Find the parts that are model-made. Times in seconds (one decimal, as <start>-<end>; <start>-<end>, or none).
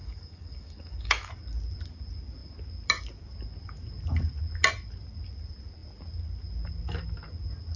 0.0-1.3